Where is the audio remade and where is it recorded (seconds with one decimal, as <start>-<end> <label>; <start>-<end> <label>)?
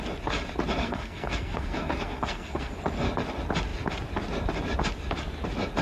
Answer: 0.0-0.8 recorded; 0.8-2.7 remade; 2.7-5.8 recorded